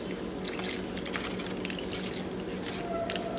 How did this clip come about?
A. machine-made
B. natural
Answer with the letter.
B